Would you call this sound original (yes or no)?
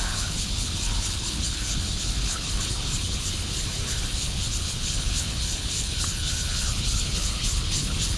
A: no